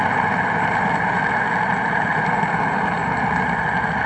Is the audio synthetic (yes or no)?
no